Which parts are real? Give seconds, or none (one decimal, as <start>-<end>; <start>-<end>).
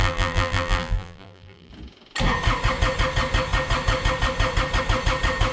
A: 1.7-5.5